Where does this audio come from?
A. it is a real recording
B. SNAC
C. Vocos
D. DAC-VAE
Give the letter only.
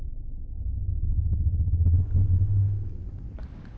A